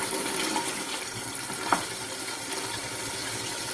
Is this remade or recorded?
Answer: remade